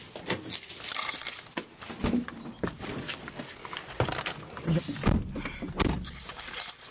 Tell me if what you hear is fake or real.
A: real